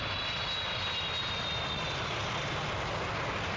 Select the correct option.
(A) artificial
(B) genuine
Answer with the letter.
B